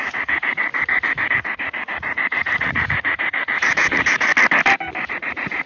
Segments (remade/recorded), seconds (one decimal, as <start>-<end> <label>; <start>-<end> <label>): 0.0-0.7 remade; 0.7-1.3 recorded; 1.3-4.3 remade; 4.3-5.1 recorded; 5.1-5.7 remade